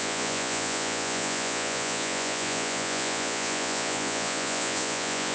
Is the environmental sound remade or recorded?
remade